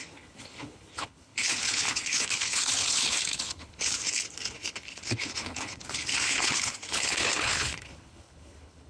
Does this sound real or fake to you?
fake